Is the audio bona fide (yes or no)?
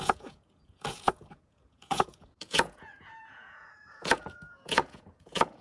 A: no